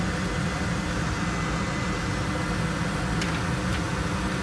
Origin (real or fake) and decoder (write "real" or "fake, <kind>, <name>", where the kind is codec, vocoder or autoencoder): real